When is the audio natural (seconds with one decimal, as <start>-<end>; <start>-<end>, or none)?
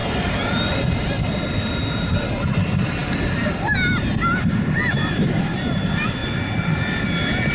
0.0-7.5